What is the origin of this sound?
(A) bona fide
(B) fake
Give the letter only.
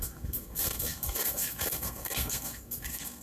B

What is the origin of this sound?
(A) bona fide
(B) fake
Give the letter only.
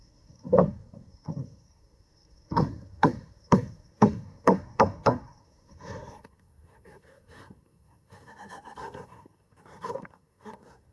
B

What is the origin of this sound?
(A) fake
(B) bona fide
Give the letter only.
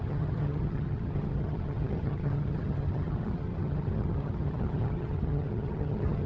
A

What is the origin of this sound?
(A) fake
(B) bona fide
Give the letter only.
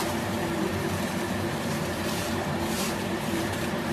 A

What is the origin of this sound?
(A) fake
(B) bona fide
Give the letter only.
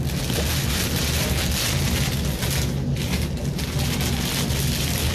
B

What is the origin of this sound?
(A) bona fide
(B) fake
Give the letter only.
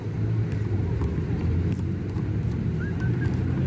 A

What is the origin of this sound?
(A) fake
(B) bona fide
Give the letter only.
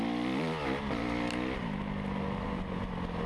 B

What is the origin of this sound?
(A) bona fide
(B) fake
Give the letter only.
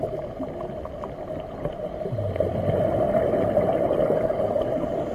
A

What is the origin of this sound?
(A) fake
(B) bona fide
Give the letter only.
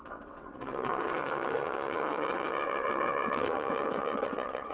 A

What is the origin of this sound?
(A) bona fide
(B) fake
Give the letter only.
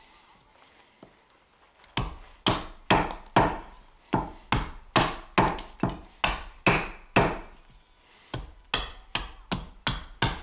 A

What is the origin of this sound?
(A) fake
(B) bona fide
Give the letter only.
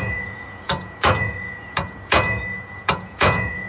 A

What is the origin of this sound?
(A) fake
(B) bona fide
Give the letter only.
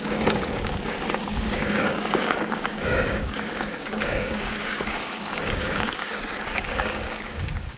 A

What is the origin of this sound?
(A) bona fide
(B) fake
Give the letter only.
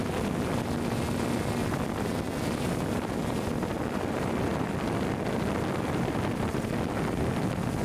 A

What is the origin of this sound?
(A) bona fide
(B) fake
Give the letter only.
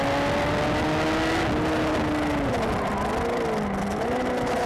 A